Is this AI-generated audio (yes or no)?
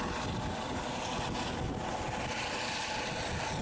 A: no